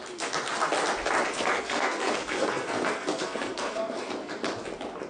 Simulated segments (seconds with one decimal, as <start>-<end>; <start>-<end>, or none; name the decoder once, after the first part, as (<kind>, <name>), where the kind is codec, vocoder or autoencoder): 1.3-4.4 (codec, SNAC)